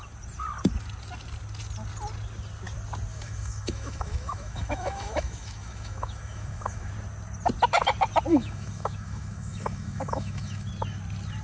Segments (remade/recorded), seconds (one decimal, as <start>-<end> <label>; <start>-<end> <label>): 0.0-3.1 recorded; 3.1-6.9 remade; 6.9-8.3 recorded; 8.3-10.7 remade; 10.7-11.4 recorded